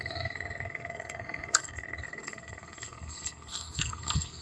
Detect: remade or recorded remade